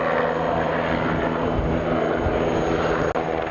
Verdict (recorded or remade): recorded